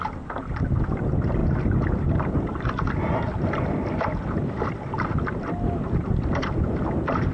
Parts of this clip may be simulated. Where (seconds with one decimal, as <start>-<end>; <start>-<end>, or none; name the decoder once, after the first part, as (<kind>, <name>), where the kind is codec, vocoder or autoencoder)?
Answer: none

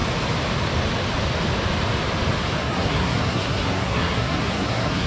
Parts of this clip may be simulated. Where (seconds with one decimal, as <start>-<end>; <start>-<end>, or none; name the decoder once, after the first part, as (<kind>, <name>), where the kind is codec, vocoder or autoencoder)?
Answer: 2.6-5.1 (codec, SNAC)

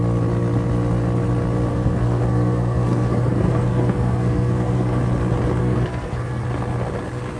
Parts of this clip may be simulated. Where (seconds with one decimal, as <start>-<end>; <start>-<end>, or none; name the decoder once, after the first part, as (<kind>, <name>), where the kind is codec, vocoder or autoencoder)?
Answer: 1.7-5.0 (codec, SNAC); 5.6-6.4

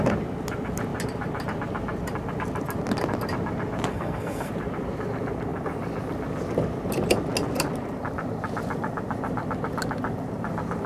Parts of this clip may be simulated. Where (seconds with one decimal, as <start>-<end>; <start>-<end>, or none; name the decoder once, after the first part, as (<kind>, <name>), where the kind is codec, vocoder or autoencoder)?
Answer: 3.9-4.5 (codec, SNAC)